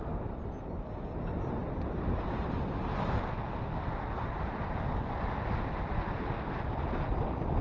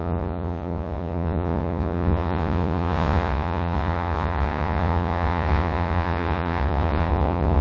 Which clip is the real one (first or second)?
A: first